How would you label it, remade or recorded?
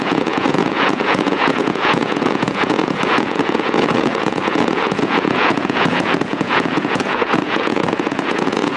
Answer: remade